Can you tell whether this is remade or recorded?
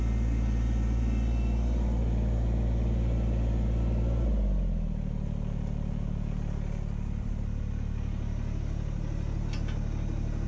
recorded